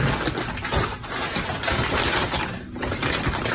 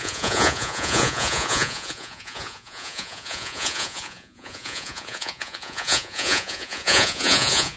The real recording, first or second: first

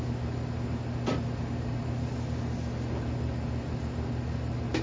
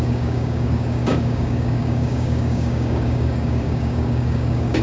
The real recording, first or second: first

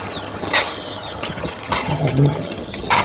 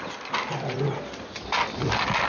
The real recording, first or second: second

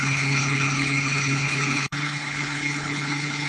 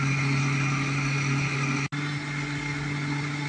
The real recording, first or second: second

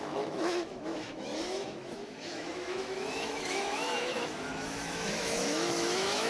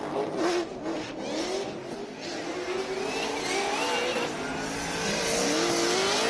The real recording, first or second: second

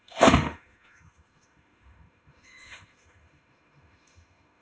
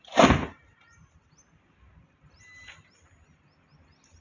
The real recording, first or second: second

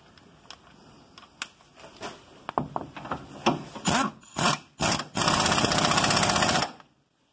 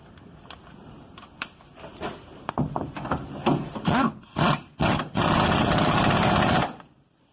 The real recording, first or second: first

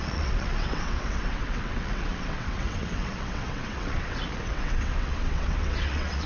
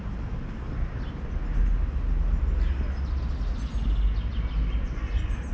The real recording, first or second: second